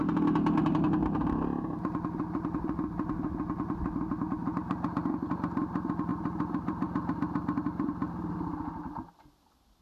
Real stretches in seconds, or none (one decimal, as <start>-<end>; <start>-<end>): 0.0-6.1; 8.1-9.8